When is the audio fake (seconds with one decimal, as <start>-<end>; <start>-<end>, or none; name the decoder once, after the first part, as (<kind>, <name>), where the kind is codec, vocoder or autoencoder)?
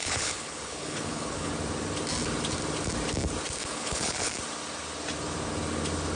0.0-1.5 (codec, HILCodec); 3.6-4.3